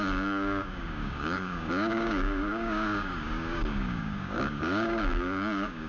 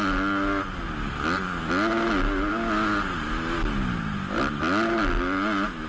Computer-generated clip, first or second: first